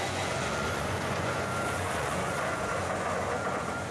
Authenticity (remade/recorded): remade